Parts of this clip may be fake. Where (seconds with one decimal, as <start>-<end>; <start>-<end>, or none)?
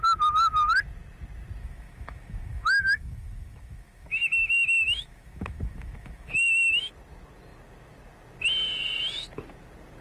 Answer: 1.6-6.9